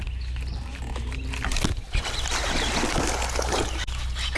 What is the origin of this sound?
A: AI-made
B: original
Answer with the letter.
B